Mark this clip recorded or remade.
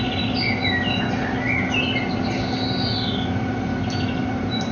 recorded